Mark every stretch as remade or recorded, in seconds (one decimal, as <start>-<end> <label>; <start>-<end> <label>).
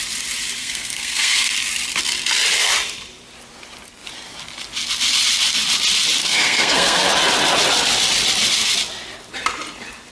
0.0-0.6 recorded; 0.6-1.5 remade; 1.5-6.2 recorded; 6.2-7.1 remade; 7.1-10.1 recorded